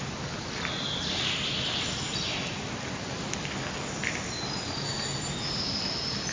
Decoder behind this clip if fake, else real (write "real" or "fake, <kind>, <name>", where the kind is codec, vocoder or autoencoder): real